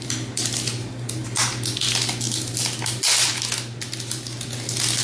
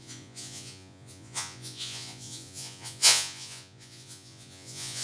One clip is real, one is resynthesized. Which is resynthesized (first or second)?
second